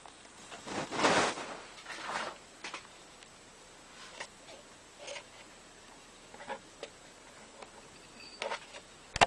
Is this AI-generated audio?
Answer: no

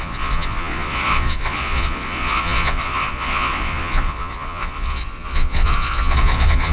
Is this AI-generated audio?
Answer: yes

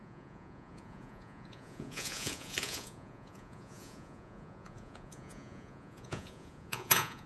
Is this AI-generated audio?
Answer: yes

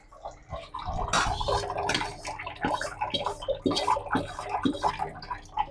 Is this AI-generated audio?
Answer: no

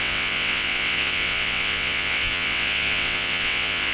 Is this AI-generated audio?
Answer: yes